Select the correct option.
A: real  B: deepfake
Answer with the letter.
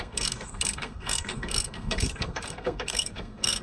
B